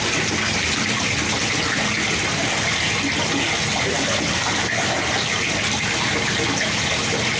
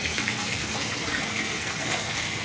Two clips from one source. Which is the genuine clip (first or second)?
first